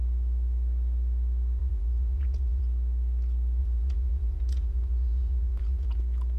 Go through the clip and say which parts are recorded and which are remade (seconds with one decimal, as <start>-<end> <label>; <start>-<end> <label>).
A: 0.0-1.6 recorded; 1.6-2.6 remade; 2.6-3.6 recorded; 3.6-6.0 remade; 6.0-6.4 recorded